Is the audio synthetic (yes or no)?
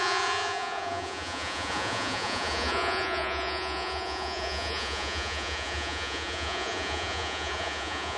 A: yes